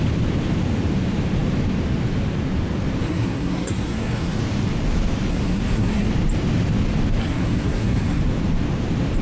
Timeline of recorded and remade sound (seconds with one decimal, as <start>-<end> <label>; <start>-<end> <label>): 0.0-3.0 recorded; 3.0-4.4 remade; 4.4-5.3 recorded; 5.3-6.1 remade; 6.1-7.2 recorded; 7.2-8.2 remade; 8.2-9.2 recorded